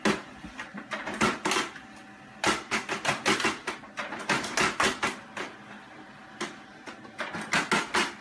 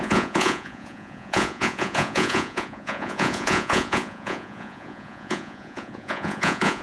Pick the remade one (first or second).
second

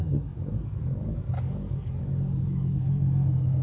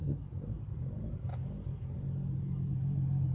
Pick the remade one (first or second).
first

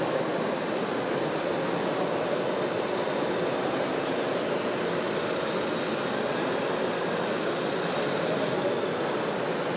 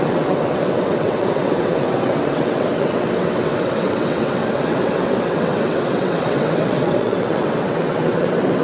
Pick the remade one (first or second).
second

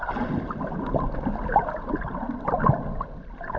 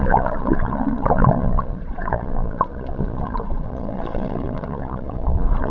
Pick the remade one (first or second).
second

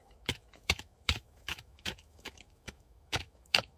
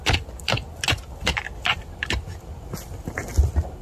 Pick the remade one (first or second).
first